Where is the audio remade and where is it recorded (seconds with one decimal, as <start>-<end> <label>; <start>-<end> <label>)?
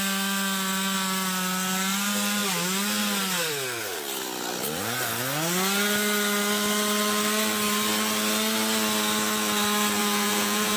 0.0-10.0 recorded; 10.0-10.8 remade